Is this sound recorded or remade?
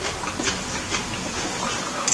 recorded